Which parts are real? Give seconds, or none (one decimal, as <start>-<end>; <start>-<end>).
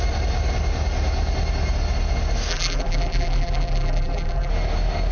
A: 0.0-2.5; 4.5-5.1